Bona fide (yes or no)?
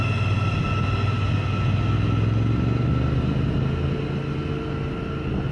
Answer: yes